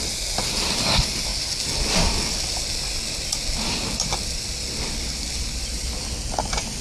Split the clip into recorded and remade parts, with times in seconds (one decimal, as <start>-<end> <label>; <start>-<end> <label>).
0.0-6.8 recorded